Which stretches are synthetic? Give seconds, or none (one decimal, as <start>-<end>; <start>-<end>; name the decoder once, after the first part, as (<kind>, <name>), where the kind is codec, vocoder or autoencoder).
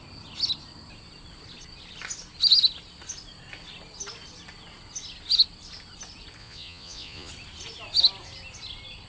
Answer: 6.4-7.3 (vocoder, Vocos)